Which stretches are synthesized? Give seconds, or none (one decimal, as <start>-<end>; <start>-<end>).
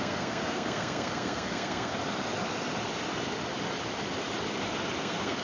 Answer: 0.0-1.9; 5.0-5.4